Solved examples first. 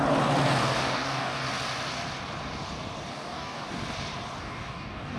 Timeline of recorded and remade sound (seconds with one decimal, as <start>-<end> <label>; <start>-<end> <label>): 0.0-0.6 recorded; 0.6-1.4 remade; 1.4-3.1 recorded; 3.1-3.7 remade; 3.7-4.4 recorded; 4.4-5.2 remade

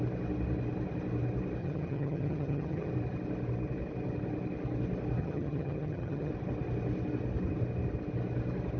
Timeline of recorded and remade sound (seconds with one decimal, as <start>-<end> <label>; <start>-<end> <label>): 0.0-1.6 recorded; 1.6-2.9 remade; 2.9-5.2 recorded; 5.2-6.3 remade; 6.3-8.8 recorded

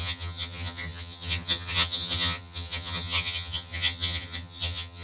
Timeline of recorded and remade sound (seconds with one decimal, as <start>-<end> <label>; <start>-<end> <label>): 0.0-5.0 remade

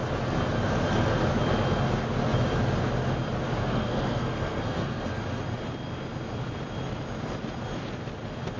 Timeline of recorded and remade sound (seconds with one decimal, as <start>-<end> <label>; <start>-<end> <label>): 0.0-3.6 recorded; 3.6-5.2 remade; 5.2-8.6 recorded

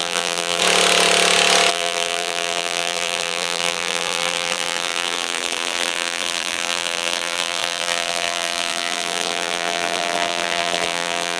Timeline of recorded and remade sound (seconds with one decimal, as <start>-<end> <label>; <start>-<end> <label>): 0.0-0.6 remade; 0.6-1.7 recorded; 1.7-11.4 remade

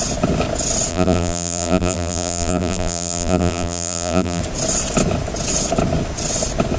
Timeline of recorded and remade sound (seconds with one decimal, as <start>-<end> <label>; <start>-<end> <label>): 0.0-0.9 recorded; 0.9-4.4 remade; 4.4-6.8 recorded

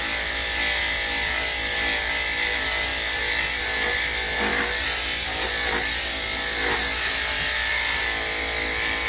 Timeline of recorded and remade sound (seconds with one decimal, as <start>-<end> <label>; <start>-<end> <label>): 0.0-9.1 recorded

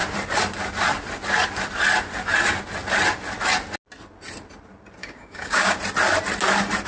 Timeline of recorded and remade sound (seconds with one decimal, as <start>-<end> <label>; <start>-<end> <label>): 0.0-5.0 recorded; 5.0-5.8 remade; 5.8-6.9 recorded